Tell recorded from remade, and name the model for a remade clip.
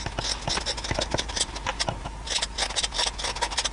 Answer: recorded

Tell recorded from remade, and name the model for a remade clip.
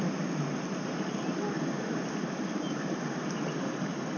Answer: recorded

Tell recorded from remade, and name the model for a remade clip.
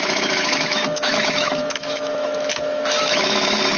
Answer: remade, autoencoder, DAC-VAE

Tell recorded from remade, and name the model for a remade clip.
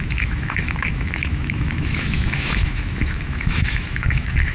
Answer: remade, autoencoder, DAC-VAE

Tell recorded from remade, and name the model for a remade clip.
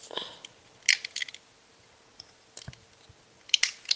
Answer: recorded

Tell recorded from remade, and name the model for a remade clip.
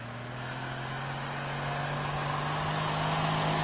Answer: recorded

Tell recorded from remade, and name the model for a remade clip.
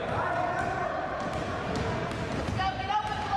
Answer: recorded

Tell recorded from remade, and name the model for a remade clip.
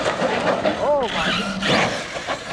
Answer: recorded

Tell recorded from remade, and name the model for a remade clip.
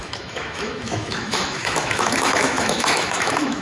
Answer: remade, autoencoder, DAC-VAE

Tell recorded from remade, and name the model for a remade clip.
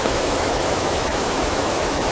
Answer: remade, autoencoder, DAC-VAE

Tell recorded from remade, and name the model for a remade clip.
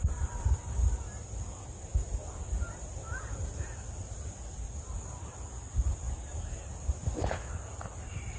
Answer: recorded